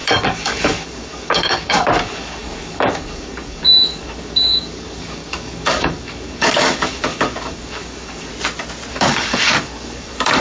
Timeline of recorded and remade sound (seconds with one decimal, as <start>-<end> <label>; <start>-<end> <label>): 0.0-8.3 remade; 8.3-8.9 recorded; 8.9-10.4 remade